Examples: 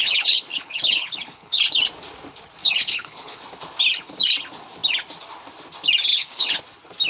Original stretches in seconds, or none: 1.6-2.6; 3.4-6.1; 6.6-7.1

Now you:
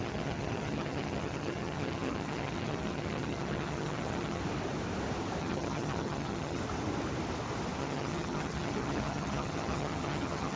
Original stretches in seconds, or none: 4.4-5.4; 6.6-7.8

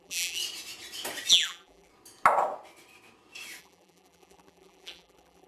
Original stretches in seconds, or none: 0.4-1.3; 1.9-3.6

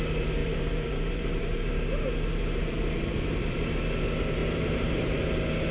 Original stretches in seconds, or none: 0.0-0.4; 3.7-4.4; 5.2-5.7

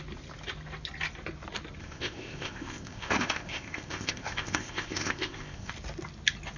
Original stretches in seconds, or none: 0.0-1.8; 5.7-6.6

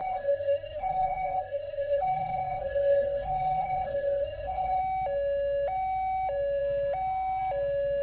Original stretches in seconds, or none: 4.8-8.0